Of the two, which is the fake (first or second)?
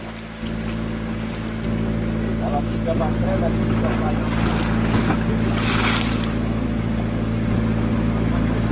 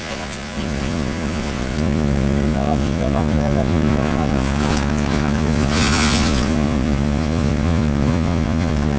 second